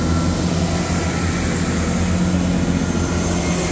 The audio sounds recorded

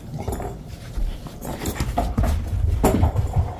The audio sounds recorded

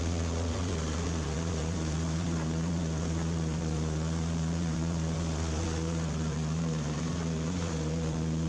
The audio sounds remade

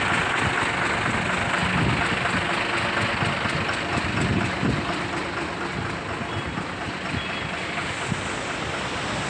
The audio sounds recorded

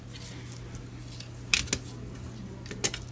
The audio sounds recorded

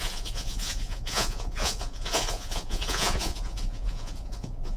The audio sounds remade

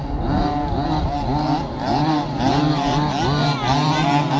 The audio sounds recorded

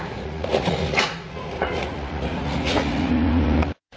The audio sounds remade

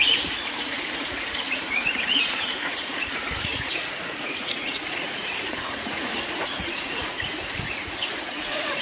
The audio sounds remade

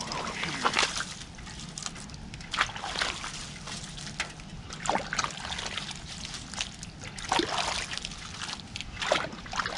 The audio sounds recorded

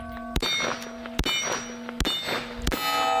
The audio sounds recorded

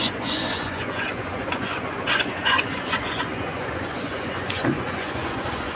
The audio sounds remade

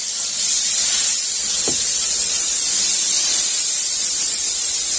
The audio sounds recorded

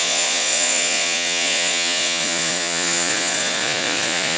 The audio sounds remade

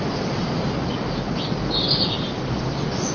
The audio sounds recorded